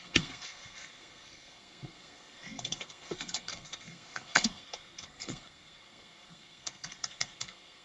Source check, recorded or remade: remade